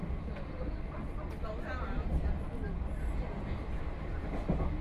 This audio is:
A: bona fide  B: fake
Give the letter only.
A